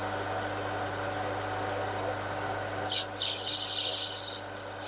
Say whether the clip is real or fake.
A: real